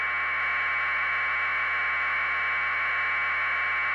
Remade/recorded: recorded